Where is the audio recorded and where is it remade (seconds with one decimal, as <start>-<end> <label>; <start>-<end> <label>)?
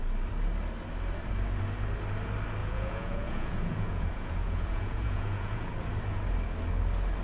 0.0-2.6 recorded; 2.6-5.7 remade; 5.7-7.2 recorded